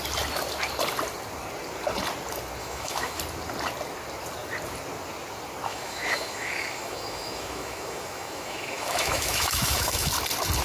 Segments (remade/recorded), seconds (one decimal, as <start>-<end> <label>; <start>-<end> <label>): 0.0-2.6 recorded; 2.6-3.2 remade; 3.2-5.7 recorded; 5.7-10.1 remade; 10.1-10.6 recorded